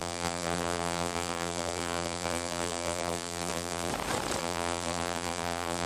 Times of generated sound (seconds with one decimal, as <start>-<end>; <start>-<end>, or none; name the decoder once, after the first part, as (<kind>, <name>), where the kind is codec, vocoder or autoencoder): 0.0-3.9 (vocoder, BigVGAN v2); 4.4-5.9